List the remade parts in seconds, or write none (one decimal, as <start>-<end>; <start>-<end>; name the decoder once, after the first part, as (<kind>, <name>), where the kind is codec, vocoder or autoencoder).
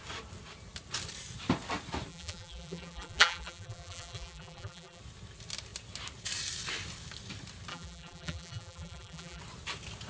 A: 2.1-5.0 (vocoder, BigVGAN v2); 7.7-9.4